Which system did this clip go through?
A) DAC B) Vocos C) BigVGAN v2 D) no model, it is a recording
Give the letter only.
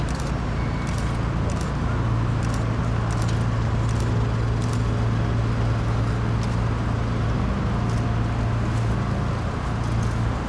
D